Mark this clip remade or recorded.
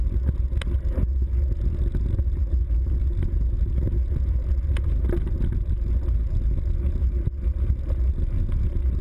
recorded